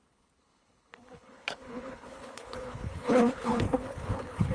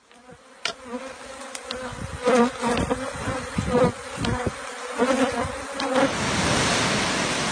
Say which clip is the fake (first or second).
first